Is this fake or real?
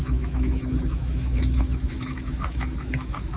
fake